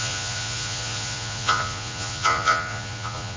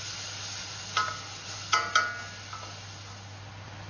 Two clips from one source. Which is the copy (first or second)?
first